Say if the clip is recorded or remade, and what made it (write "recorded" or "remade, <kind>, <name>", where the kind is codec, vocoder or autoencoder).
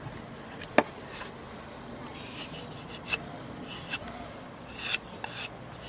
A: recorded